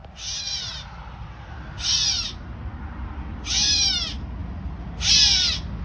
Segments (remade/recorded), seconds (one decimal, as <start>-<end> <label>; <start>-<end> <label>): 0.0-5.8 recorded